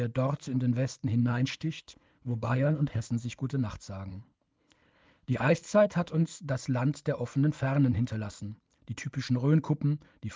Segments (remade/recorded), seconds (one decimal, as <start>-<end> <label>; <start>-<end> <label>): 0.0-1.2 recorded; 1.2-3.1 remade; 3.1-4.1 recorded; 4.1-6.4 remade; 6.4-10.4 recorded